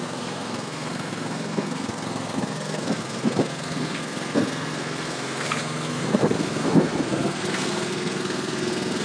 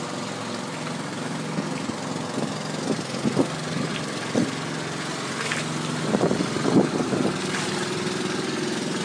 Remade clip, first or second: first